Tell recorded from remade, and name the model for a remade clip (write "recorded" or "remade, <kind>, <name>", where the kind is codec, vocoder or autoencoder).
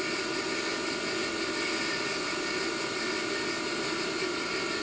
recorded